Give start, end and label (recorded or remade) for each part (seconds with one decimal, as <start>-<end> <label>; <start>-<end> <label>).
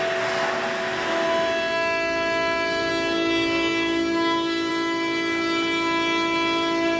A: 0.0-2.9 recorded; 2.9-4.7 remade; 4.7-7.0 recorded